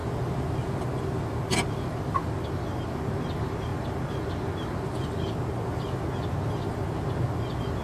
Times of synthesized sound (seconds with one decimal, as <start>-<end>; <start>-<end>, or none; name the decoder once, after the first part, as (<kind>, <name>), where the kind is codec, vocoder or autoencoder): none